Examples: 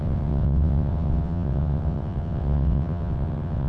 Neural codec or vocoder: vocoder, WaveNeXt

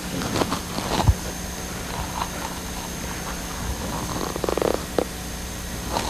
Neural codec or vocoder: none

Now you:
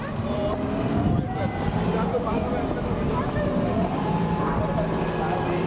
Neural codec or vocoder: none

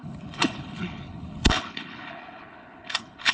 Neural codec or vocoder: codec, HILCodec